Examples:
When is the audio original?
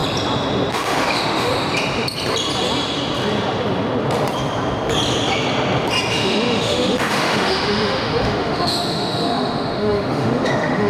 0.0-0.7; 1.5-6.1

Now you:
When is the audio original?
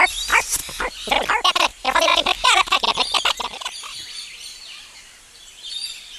0.0-6.2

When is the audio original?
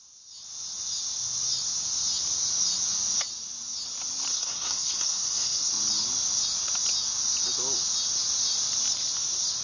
0.0-4.3; 5.7-9.6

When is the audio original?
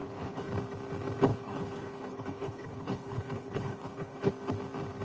0.5-1.3; 4.3-5.0